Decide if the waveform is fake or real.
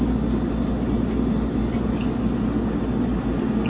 real